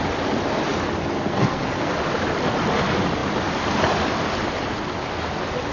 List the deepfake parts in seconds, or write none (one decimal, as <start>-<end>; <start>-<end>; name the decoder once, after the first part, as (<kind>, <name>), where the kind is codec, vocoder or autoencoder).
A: 1.2-1.9 (codec, SNAC)